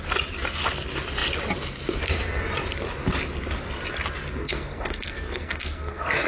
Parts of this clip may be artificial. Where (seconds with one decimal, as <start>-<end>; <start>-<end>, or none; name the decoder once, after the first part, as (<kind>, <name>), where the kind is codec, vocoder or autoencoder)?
4.4-6.3 (codec, SNAC)